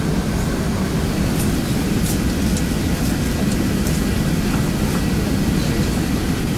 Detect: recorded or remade recorded